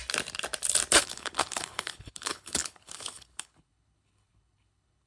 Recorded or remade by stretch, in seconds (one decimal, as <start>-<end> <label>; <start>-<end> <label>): 0.0-1.0 recorded; 1.0-5.1 remade

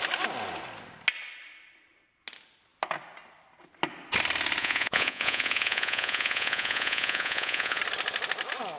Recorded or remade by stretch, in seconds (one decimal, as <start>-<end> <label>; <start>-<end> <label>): 0.0-4.6 recorded; 4.6-7.8 remade; 7.8-8.8 recorded

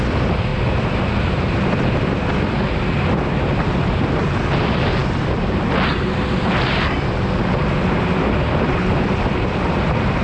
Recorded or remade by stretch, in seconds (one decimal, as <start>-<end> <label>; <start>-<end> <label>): 0.0-10.2 recorded

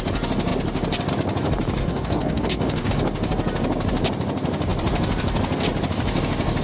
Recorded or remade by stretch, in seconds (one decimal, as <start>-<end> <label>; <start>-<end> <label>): 0.0-1.8 recorded; 1.8-2.9 remade; 2.9-6.6 recorded

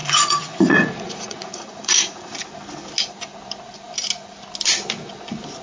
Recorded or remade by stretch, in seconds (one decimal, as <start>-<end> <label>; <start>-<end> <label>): 0.0-2.4 remade; 2.4-5.6 recorded